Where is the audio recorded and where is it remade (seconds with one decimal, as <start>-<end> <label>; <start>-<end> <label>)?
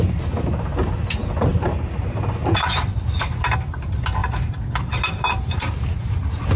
0.0-6.6 recorded